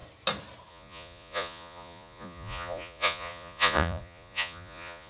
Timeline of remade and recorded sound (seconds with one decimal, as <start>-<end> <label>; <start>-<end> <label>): 0.0-0.7 recorded; 0.7-5.1 remade